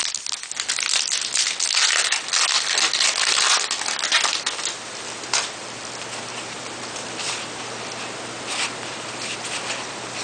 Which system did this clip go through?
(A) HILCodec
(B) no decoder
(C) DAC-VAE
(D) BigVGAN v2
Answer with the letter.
B